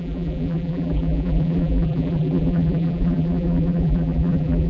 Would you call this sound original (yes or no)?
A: no